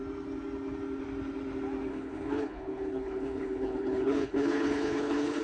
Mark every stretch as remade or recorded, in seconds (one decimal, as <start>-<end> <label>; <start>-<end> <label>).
0.0-1.9 recorded; 1.9-5.4 remade